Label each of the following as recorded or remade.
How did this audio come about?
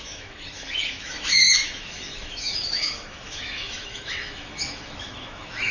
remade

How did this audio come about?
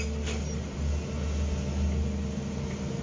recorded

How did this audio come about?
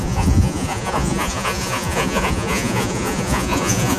remade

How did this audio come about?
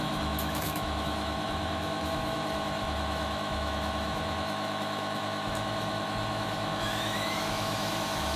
remade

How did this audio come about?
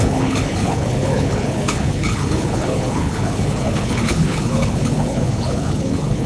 remade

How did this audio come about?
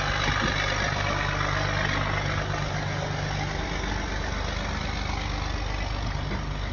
recorded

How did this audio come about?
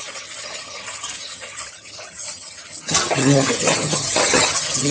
remade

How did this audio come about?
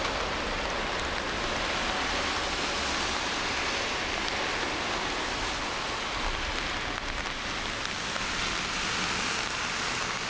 recorded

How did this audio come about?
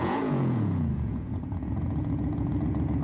remade